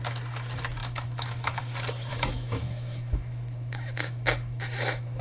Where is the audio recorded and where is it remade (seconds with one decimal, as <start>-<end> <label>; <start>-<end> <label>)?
0.0-0.8 recorded; 0.8-1.6 remade; 1.6-2.1 recorded; 2.1-5.2 remade

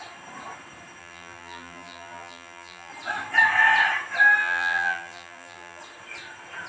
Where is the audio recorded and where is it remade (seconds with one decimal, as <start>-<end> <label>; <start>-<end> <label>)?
0.0-1.0 recorded; 1.0-2.9 remade; 2.9-4.4 recorded; 4.4-5.8 remade; 5.8-6.7 recorded

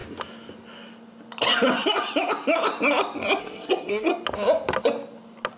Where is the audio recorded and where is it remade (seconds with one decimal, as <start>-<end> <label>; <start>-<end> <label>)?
0.0-3.4 recorded; 3.4-4.1 remade; 4.1-5.6 recorded

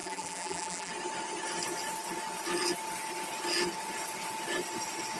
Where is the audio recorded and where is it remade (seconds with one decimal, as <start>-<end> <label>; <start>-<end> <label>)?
0.0-0.9 remade; 0.9-5.2 recorded

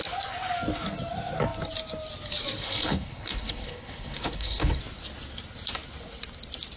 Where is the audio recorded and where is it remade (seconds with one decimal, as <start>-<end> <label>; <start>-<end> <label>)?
0.0-2.6 recorded; 2.6-4.8 remade; 4.8-6.8 recorded

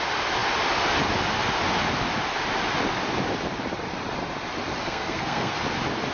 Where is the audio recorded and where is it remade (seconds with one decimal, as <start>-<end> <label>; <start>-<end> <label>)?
0.0-4.8 recorded; 4.8-5.5 remade; 5.5-6.1 recorded

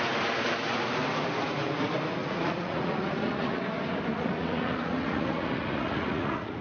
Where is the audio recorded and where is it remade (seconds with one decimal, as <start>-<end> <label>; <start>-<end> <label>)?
0.0-2.2 recorded; 2.2-3.6 remade; 3.6-4.1 recorded; 4.1-6.6 remade